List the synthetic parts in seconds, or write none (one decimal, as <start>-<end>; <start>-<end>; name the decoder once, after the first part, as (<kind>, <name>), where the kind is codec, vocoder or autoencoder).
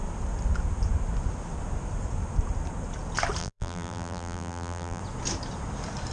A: 3.4-5.0 (vocoder, BigVGAN v2)